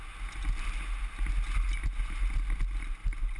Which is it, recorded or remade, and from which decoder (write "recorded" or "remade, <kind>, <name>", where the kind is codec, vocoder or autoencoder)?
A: recorded